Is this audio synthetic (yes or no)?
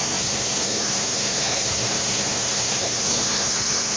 yes